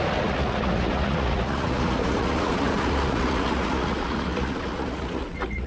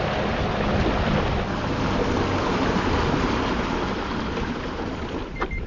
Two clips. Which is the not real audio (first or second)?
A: first